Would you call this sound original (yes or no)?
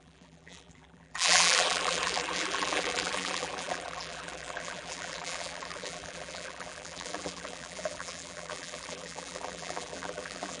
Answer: no